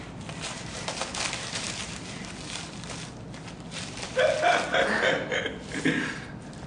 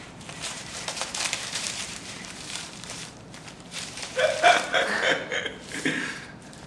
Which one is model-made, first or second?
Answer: second